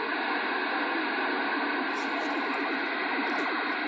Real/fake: real